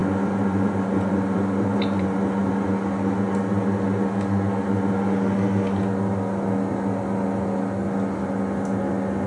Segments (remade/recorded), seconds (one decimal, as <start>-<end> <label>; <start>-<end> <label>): 0.0-2.5 remade; 2.5-9.3 recorded